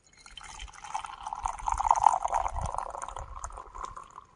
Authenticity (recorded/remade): recorded